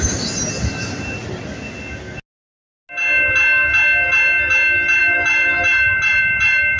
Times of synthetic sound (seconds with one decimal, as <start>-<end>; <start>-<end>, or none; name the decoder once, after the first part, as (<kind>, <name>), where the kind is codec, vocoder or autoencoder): 0.0-1.2 (vocoder, BigVGAN v2); 5.0-6.8